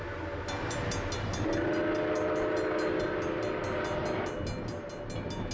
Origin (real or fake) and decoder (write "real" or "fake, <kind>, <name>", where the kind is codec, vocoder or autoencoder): real